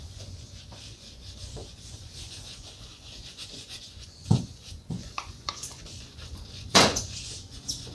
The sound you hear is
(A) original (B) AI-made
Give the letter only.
B